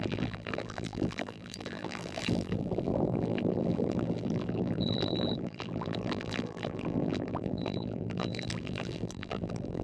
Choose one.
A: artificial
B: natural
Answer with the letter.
A